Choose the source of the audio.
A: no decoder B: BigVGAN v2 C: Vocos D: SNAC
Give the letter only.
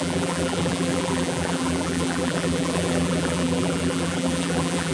B